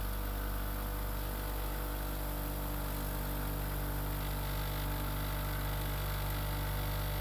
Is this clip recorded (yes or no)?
yes